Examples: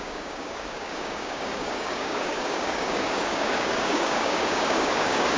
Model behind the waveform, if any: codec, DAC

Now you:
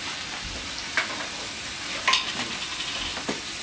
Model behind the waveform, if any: none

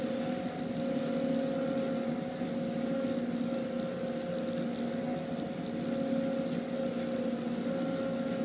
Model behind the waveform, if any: none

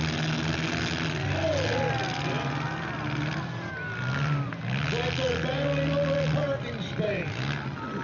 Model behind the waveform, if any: none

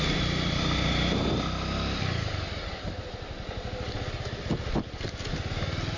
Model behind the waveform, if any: none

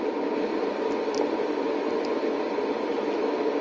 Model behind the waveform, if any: none